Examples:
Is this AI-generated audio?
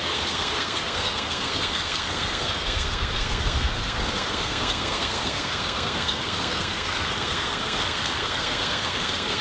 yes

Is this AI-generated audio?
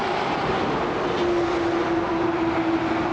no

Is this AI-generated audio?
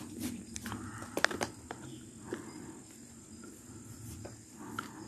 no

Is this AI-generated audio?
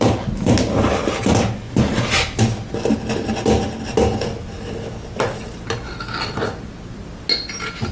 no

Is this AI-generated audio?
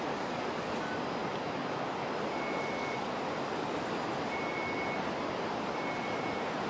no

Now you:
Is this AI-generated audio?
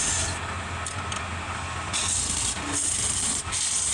no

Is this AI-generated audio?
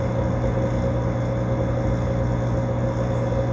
no